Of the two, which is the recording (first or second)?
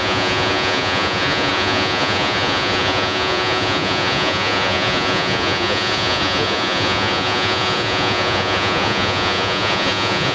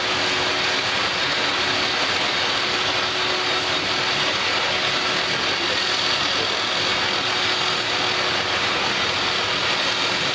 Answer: second